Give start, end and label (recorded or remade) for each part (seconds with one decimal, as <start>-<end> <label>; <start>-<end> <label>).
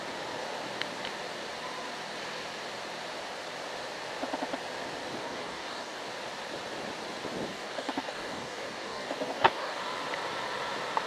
0.0-5.2 recorded; 5.2-6.0 remade; 6.0-7.5 recorded; 7.5-9.8 remade; 9.8-11.1 recorded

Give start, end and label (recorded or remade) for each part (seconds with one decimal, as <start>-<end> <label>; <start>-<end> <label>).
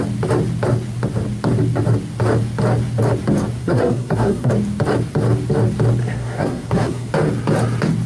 0.0-3.6 recorded; 3.6-4.5 remade; 4.5-6.0 recorded; 6.0-7.1 remade; 7.1-8.1 recorded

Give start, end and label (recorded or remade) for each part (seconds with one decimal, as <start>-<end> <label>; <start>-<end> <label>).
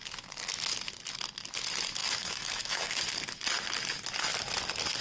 0.0-2.0 recorded; 2.0-3.0 remade; 3.0-5.0 recorded